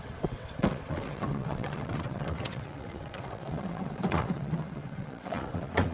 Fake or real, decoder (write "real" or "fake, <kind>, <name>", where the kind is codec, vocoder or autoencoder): fake, vocoder, WaveNeXt